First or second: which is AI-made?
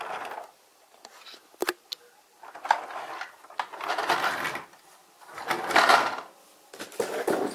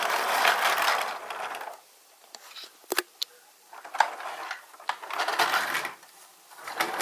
second